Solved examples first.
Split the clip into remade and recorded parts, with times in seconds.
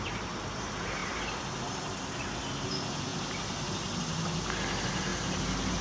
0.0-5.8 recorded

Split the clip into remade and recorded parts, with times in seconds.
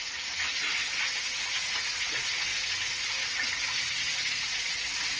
0.0-0.8 remade; 0.8-1.3 recorded; 1.3-2.5 remade; 2.5-4.5 recorded; 4.5-5.2 remade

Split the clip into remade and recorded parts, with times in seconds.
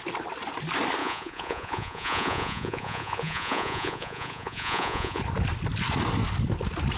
0.0-1.0 recorded; 1.0-5.2 remade; 5.2-7.0 recorded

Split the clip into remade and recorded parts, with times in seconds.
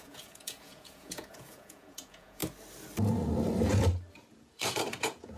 0.0-2.4 remade; 2.4-4.3 recorded; 4.3-5.4 remade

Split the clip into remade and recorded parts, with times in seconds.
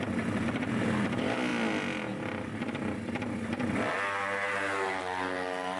0.0-5.8 recorded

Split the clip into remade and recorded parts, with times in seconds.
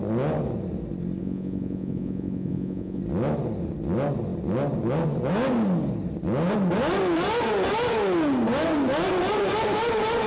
0.0-1.2 recorded; 1.2-3.0 remade; 3.0-10.3 recorded